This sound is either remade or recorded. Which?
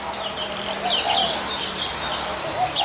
recorded